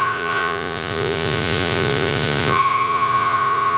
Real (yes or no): no